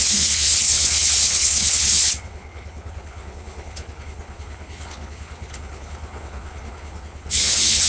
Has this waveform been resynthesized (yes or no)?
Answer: yes